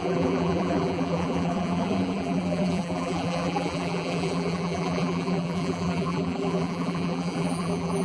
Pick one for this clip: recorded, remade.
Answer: remade